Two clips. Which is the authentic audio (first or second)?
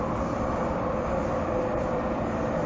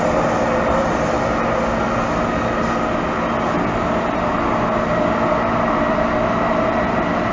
second